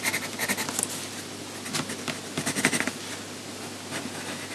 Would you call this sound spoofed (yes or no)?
no